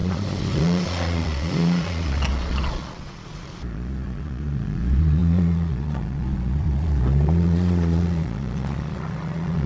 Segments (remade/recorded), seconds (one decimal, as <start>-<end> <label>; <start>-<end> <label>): 0.0-9.7 remade